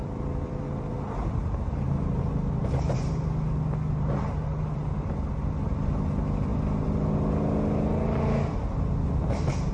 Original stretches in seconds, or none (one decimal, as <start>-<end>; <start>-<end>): 1.6-9.7